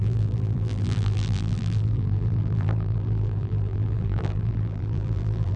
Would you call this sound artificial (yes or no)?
yes